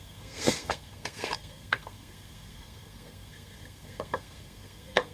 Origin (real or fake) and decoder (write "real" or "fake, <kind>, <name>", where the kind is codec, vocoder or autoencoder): fake, codec, SNAC